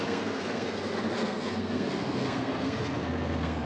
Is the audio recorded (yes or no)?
no